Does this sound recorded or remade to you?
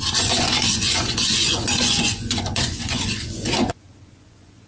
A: remade